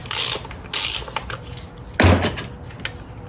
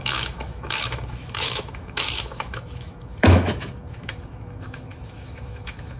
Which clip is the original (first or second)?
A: first